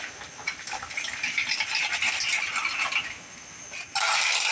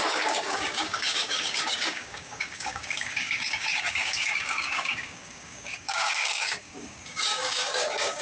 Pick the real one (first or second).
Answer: first